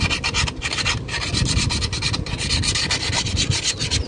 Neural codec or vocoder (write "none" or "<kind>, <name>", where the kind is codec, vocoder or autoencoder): none